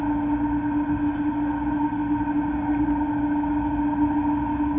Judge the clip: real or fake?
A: real